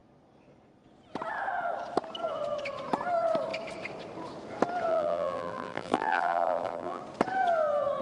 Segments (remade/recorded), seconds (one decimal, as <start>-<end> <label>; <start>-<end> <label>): 0.0-4.9 recorded; 4.9-7.0 remade; 7.0-8.0 recorded